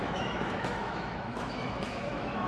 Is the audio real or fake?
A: fake